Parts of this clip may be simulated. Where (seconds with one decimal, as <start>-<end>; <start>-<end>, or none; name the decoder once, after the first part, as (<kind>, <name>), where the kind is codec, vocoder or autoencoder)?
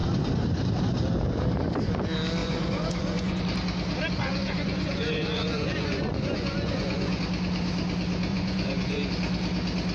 2.4-3.4 (vocoder, Vocos); 4.3-7.2; 8.3-9.1